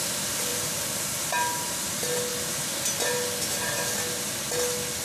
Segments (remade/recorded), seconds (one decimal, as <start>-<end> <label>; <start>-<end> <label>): 0.0-5.0 recorded

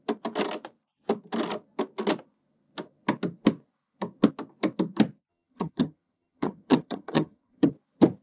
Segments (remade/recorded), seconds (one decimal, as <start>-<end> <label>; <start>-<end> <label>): 0.0-5.3 recorded; 5.3-7.7 remade; 7.7-8.2 recorded

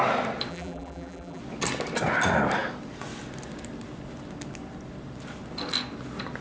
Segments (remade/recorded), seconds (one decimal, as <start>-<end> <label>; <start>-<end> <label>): 0.0-0.5 recorded; 0.5-1.4 remade; 1.4-6.4 recorded

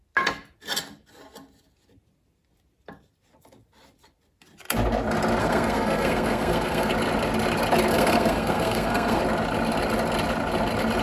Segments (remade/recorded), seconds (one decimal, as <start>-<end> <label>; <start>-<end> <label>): 0.0-5.4 recorded; 5.4-6.9 remade; 6.9-7.9 recorded; 7.9-9.2 remade; 9.2-11.0 recorded